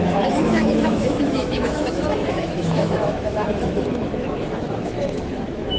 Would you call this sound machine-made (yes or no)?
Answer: yes